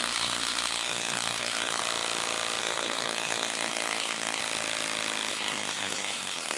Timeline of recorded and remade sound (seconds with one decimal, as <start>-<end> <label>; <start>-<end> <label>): 0.0-1.8 remade; 1.8-2.6 recorded; 2.6-4.4 remade; 4.4-5.3 recorded; 5.3-6.6 remade